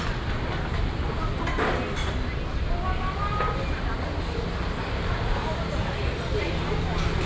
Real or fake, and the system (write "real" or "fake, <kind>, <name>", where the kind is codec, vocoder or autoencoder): real